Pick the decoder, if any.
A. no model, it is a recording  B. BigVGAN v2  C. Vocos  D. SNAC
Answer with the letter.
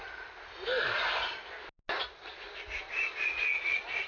A